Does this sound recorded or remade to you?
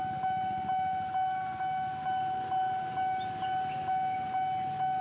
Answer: recorded